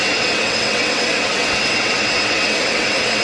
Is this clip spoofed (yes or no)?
yes